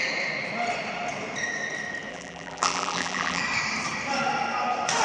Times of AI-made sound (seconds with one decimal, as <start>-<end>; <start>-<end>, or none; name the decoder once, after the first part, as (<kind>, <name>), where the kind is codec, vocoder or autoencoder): 2.1-3.4 (vocoder, BigVGAN v2)